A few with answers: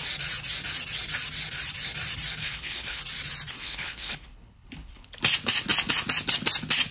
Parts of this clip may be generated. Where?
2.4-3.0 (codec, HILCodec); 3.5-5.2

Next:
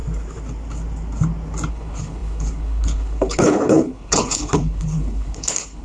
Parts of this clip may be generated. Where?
1.7-5.8 (codec, HILCodec)

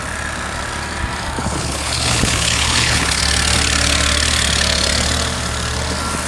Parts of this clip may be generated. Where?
1.4-3.2 (codec, HILCodec)

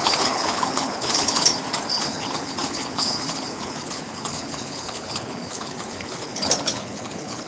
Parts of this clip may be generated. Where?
0.0-1.5 (codec, HILCodec); 2.0-7.5

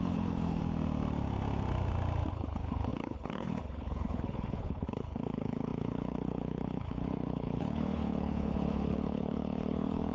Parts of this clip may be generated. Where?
0.0-0.6 (codec, HILCodec); 2.3-10.1

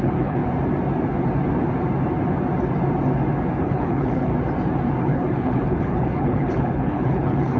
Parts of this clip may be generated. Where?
0.0-0.4 (codec, HILCodec); 3.6-4.3; 5.0-7.6

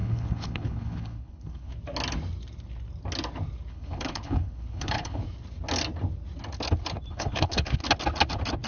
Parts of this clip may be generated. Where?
0.0-1.7 (codec, HILCodec); 3.7-5.2; 7.1-7.8